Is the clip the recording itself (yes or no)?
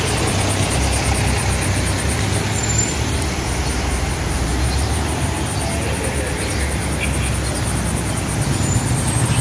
yes